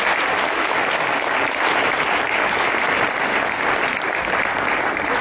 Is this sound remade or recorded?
recorded